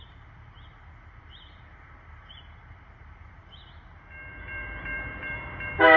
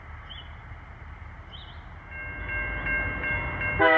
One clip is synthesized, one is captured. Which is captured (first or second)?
second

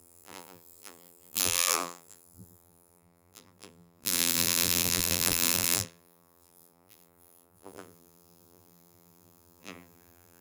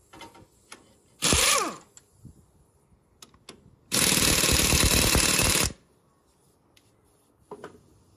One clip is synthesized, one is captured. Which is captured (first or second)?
second